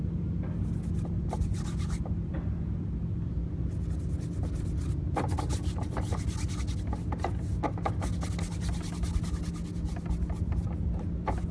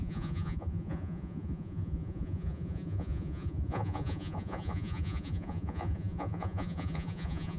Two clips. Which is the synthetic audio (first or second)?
second